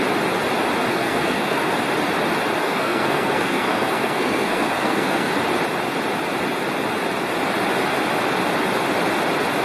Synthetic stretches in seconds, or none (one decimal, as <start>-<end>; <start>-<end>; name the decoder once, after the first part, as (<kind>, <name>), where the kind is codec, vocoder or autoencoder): 0.9-1.7 (codec, SNAC); 2.6-5.3